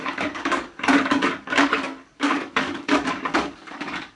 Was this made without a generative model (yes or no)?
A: no